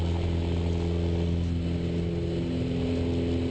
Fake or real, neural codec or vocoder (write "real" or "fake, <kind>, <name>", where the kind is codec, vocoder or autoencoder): real